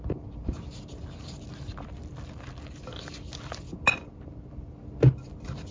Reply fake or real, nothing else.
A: real